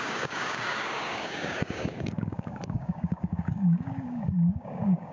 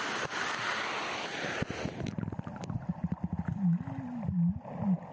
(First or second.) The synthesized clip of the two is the first